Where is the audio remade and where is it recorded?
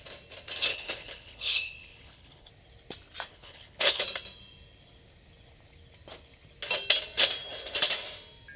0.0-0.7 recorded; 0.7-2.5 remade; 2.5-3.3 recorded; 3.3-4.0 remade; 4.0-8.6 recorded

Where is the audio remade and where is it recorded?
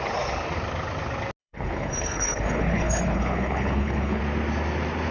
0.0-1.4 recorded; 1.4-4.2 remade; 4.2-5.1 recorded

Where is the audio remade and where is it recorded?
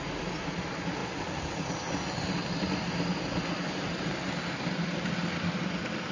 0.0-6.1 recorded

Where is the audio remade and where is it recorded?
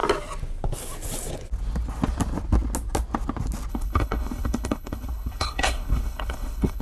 0.0-3.7 recorded; 3.7-6.8 remade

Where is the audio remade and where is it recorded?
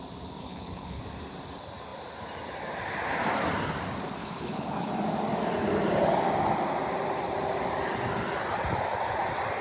0.0-0.4 recorded; 0.4-1.0 remade; 1.0-4.2 recorded; 4.2-4.9 remade; 4.9-9.6 recorded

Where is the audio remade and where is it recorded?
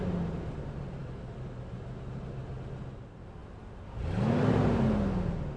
0.0-5.6 recorded